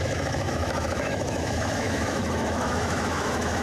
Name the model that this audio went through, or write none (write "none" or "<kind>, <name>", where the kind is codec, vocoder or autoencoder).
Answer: autoencoder, DAC-VAE